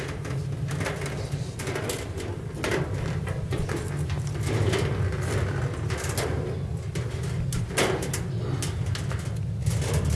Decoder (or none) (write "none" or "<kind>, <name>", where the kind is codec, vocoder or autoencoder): none